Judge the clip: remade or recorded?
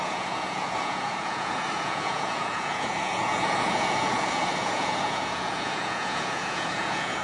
remade